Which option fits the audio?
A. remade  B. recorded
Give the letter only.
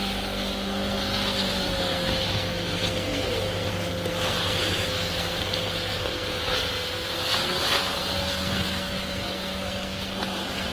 A